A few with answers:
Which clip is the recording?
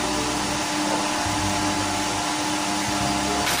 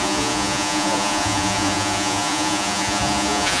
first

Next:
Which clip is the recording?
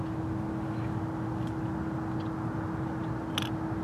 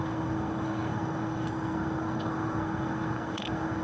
first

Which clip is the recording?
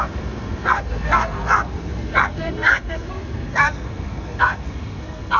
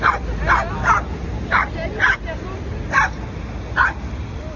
second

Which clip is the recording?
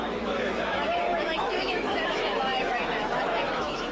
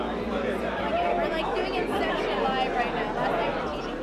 second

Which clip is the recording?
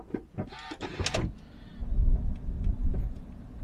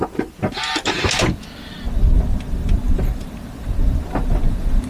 first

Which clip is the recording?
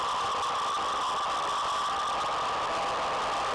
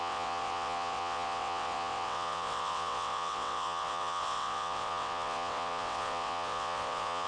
first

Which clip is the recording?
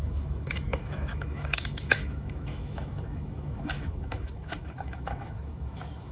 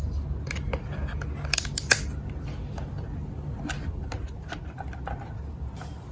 second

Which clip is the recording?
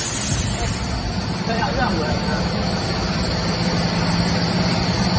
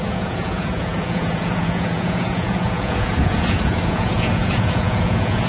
first